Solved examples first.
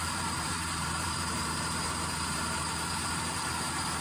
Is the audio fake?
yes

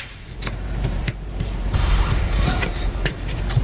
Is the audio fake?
yes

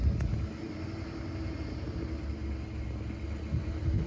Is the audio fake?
no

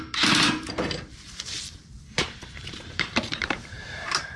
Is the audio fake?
yes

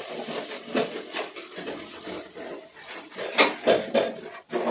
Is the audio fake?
no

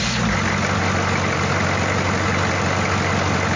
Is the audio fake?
no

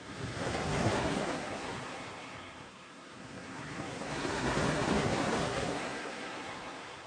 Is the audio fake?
yes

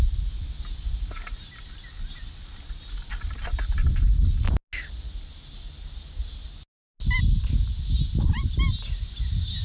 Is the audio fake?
no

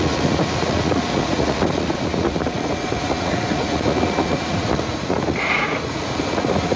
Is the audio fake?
yes